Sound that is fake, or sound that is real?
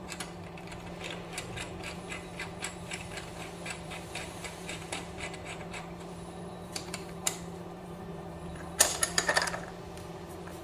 fake